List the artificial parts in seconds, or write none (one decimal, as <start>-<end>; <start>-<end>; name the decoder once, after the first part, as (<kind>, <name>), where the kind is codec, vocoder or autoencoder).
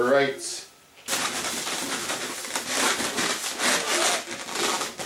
0.5-3.6 (vocoder, BigVGAN v2)